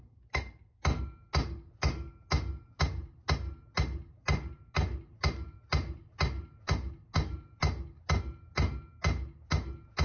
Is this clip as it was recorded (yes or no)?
yes